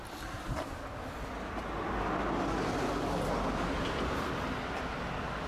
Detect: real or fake real